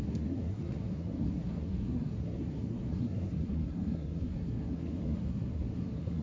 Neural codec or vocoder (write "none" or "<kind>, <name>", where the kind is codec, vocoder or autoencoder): codec, SNAC